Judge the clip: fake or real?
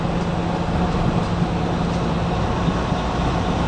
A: real